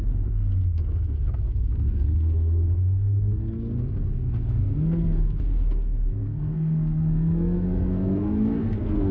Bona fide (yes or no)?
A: no